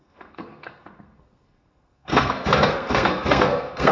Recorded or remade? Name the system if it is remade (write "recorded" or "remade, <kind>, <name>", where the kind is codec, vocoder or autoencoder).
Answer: remade, codec, SNAC